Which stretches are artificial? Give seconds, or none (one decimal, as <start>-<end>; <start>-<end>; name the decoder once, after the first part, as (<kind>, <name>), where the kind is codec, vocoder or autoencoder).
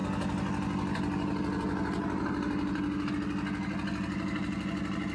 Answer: none